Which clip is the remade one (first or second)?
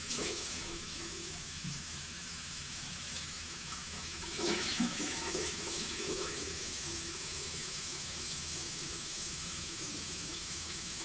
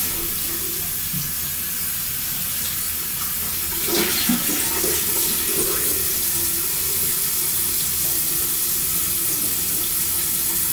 first